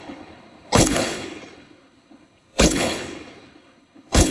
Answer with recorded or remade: remade